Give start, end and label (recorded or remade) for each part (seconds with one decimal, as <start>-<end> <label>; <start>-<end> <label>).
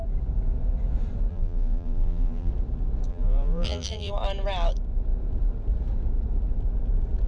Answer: 0.0-1.3 recorded; 1.3-2.5 remade; 2.5-3.1 recorded; 3.1-4.1 remade; 4.1-7.3 recorded